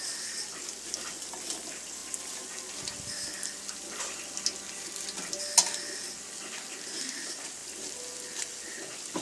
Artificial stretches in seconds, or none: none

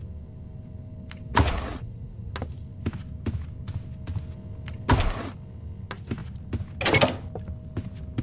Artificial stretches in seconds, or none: 1.3-2.3 (vocoder, Vocos)

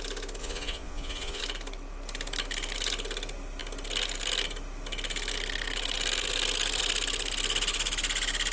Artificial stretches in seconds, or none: 0.4-1.4 (vocoder, Vocos)

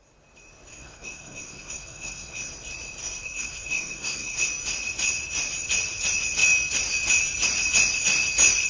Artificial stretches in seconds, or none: 0.7-2.5 (codec, SNAC); 3.0-4.5

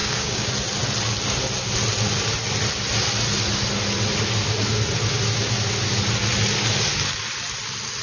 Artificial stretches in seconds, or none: 0.0-0.5 (codec, DAC)

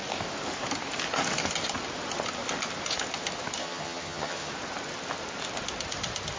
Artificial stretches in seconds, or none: 3.6-4.5 (vocoder, HiFi-GAN)

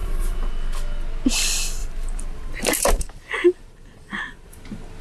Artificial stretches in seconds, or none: 0.0-0.5 (vocoder, BigVGAN v2); 1.8-4.5